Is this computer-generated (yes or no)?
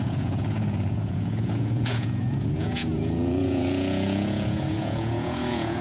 yes